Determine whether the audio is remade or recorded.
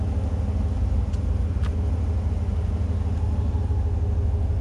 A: recorded